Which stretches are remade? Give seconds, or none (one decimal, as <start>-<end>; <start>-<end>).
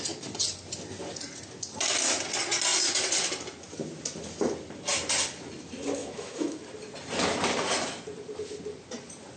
6.0-6.6